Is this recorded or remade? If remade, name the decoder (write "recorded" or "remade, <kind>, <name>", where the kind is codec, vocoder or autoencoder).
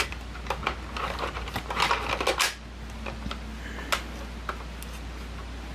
recorded